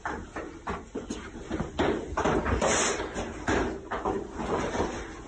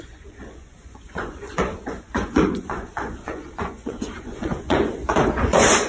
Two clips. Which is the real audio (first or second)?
first